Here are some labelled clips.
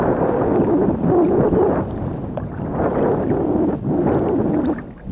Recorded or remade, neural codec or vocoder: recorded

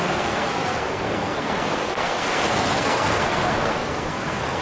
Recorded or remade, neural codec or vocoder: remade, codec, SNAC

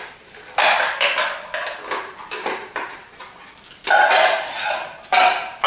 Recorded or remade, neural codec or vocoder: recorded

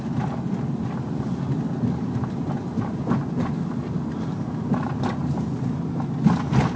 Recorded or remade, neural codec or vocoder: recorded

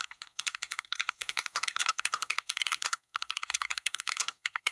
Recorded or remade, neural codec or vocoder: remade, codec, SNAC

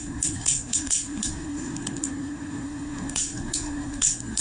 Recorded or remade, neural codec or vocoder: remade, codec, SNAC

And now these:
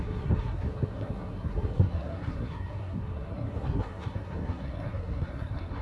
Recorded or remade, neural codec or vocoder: remade, codec, SNAC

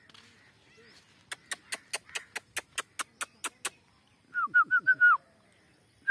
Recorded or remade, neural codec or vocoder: recorded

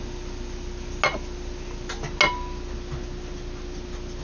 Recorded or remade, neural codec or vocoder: recorded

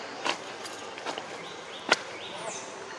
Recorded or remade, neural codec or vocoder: recorded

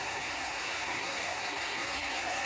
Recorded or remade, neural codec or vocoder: remade, codec, SNAC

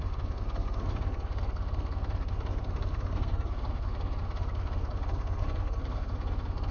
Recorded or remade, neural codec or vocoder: remade, codec, SNAC